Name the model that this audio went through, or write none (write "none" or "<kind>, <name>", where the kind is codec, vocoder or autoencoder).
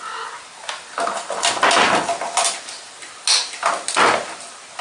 none